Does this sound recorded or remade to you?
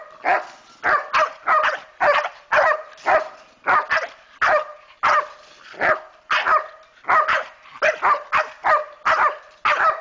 recorded